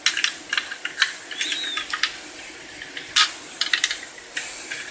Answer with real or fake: real